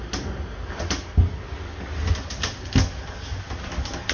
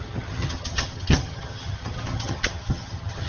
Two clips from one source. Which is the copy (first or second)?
second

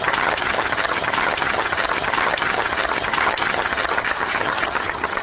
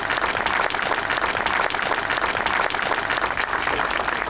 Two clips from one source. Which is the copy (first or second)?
first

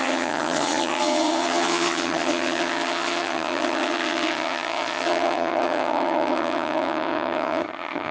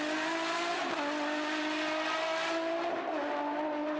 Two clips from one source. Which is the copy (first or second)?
first